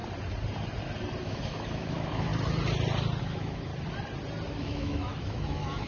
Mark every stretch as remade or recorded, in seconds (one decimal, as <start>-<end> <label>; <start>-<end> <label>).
0.0-1.2 recorded; 1.2-2.3 remade; 2.3-3.2 recorded; 3.2-3.7 remade; 3.7-4.5 recorded; 4.5-5.9 remade